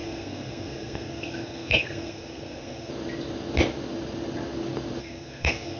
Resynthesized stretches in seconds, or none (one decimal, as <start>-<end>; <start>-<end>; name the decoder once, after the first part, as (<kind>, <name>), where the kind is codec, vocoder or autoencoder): 0.0-2.9 (codec, SNAC); 5.0-5.8